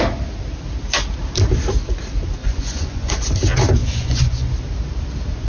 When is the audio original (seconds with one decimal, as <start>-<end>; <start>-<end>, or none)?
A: 0.0-2.4; 3.1-3.8; 4.5-5.5